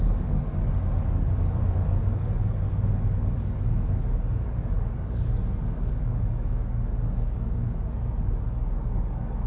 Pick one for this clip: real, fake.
fake